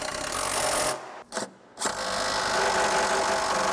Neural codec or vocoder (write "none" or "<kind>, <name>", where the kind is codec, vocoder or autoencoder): none